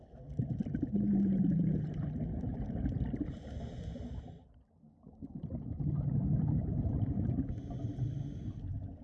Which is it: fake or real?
real